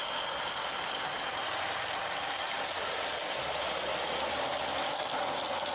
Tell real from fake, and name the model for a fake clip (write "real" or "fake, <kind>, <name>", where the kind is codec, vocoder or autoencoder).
real